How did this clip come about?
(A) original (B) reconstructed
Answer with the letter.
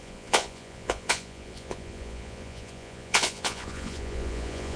B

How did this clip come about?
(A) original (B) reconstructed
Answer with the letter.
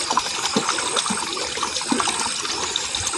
A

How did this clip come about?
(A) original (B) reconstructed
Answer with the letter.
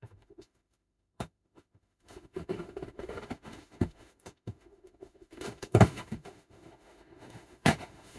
B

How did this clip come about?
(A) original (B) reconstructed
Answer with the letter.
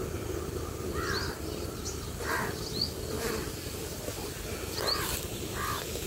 A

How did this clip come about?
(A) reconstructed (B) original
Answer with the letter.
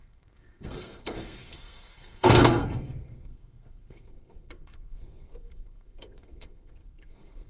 A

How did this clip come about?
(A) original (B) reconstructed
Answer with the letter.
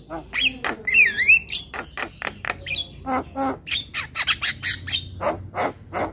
A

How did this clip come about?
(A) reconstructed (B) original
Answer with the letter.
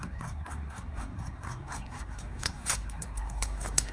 A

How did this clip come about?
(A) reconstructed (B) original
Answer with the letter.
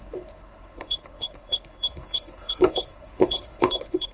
A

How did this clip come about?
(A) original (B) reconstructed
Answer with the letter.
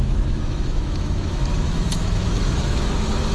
B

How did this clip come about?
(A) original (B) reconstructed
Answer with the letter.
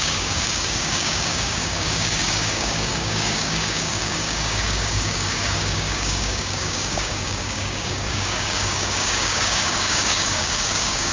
B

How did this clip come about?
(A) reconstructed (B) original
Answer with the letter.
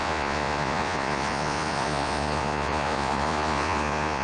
A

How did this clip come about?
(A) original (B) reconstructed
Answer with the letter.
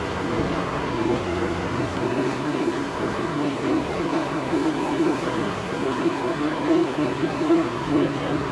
B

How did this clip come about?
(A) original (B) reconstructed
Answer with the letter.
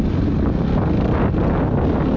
A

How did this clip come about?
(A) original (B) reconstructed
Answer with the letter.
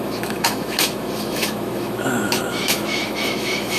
B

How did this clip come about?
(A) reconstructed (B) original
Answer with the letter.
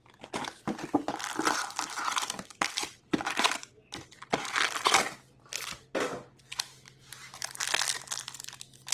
B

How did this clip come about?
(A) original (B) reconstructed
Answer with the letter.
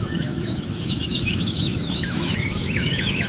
B